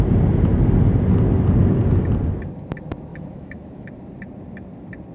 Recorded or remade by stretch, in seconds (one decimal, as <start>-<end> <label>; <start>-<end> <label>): 0.0-3.1 recorded; 3.1-3.9 remade; 3.9-5.1 recorded

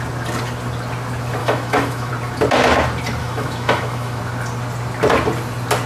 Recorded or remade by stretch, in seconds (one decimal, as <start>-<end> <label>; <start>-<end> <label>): 0.0-1.4 recorded; 1.4-2.1 remade; 2.1-3.2 recorded; 3.2-4.2 remade; 4.2-5.9 recorded